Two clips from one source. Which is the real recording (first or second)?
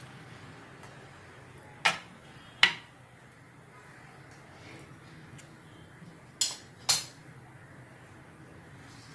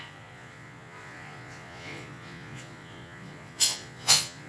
first